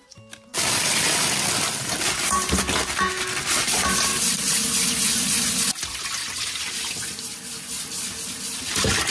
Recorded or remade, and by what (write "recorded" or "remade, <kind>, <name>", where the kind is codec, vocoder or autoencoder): recorded